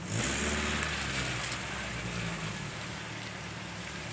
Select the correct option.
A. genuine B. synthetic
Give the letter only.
A